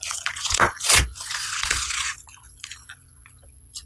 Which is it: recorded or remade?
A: remade